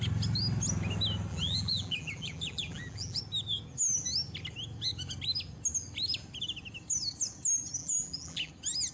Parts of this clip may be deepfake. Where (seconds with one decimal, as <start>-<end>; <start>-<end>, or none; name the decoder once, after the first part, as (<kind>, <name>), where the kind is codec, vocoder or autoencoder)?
1.3-3.2 (vocoder, BigVGAN v2); 7.8-8.5